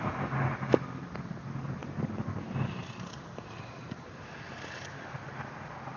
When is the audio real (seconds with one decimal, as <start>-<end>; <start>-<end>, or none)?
0.0-6.0